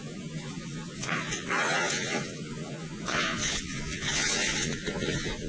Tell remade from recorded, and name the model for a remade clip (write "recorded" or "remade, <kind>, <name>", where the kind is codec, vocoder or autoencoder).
remade, vocoder, Vocos